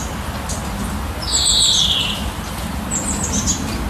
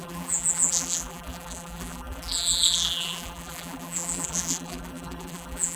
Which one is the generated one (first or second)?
second